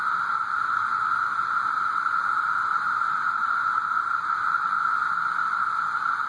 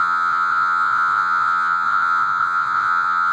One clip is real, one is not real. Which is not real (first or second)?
second